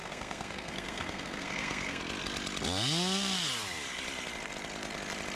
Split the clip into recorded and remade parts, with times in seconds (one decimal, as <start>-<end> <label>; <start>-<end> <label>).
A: 0.0-2.0 remade; 2.0-5.3 recorded